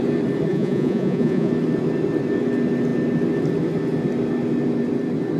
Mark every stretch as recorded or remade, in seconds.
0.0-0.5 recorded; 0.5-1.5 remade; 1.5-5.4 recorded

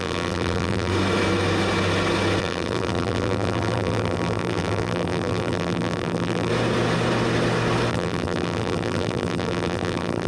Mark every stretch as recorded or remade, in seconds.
0.0-0.9 remade; 0.9-2.4 recorded; 2.4-6.5 remade; 6.5-7.9 recorded; 7.9-10.3 remade

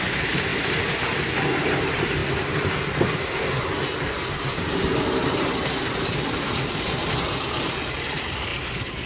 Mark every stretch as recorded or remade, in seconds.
0.0-0.5 remade; 0.5-1.6 recorded; 1.6-2.2 remade; 2.2-4.5 recorded; 4.5-9.1 remade

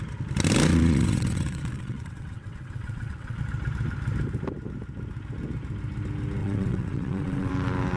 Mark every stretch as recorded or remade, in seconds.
0.0-0.7 recorded; 0.7-3.4 remade; 3.4-6.4 recorded; 6.4-7.5 remade; 7.5-8.0 recorded

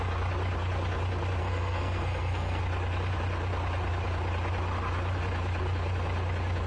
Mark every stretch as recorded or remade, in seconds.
0.0-1.4 recorded; 1.4-2.6 remade; 2.6-6.7 recorded